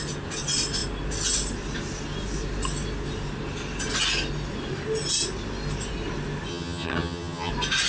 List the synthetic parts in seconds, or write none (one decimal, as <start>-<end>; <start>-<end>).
6.5-7.5